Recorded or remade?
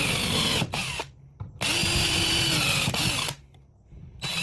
recorded